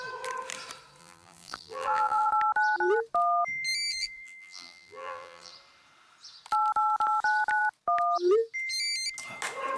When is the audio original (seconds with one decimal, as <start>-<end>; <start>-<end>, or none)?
0.0-1.0; 2.3-3.9; 5.5-9.8